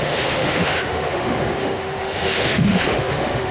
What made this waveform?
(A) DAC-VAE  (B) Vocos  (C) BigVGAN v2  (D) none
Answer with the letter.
A